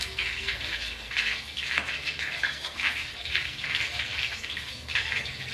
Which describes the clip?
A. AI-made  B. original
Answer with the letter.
A